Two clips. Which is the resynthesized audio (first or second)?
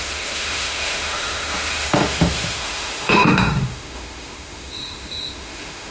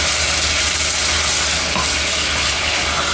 first